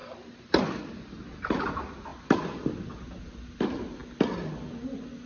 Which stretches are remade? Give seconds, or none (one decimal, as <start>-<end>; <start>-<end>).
none